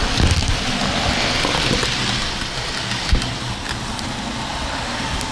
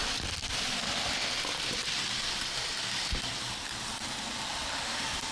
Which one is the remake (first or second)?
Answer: second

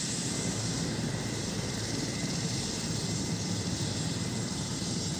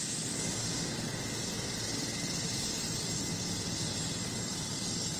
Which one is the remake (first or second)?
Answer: first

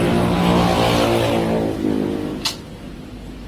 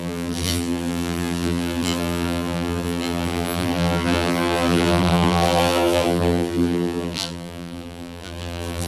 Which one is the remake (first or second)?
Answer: second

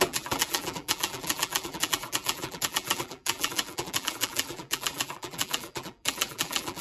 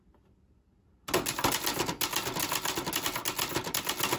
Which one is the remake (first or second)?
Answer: first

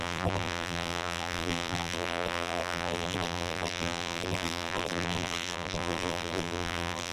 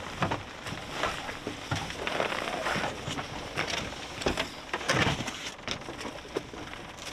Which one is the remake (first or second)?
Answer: first